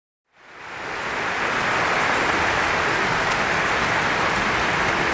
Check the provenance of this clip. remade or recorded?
recorded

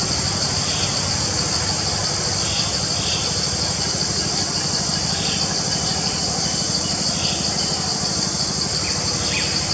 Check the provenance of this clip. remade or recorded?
recorded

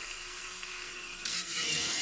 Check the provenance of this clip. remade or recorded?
remade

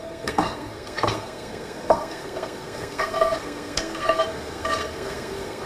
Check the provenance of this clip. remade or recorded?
remade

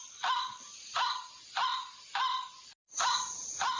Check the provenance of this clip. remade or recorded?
recorded